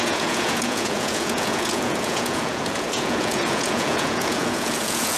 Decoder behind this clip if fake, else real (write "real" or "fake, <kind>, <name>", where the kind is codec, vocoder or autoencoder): fake, vocoder, Vocos